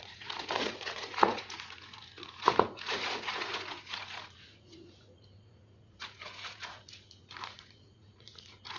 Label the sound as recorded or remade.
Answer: remade